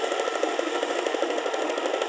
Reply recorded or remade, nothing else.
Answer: remade